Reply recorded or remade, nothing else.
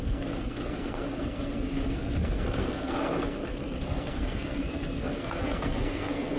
remade